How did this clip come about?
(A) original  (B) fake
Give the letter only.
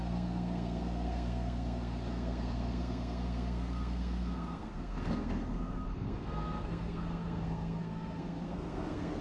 B